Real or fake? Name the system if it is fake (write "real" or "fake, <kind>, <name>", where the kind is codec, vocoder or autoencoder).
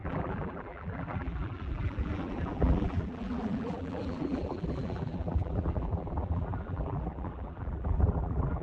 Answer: fake, vocoder, BigVGAN v2